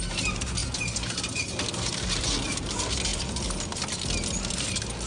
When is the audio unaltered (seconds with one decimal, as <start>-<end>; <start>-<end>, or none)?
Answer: 0.0-5.1